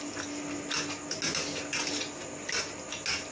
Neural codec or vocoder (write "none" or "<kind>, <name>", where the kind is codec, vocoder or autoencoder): none